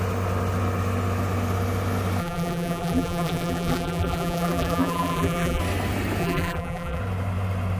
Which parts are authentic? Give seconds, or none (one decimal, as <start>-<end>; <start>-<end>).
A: 0.0-2.2; 5.6-6.2; 7.0-7.8